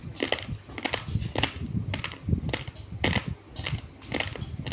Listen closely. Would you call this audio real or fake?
real